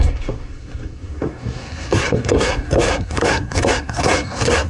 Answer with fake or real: fake